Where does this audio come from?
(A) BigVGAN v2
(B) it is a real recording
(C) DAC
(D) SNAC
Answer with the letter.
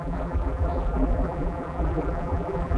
A